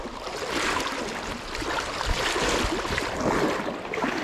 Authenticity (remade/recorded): recorded